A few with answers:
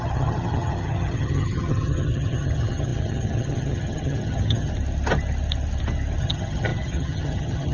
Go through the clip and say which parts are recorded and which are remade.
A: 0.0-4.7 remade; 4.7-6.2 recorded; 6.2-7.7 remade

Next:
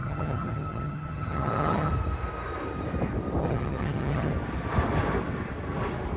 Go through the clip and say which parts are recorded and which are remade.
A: 0.0-1.9 remade; 1.9-3.4 recorded; 3.4-4.3 remade; 4.3-6.2 recorded

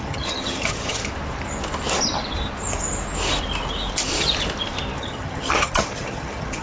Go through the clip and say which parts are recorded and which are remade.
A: 0.0-1.0 remade; 1.0-5.0 recorded; 5.0-6.6 remade